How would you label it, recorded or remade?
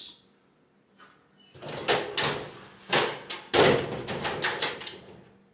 recorded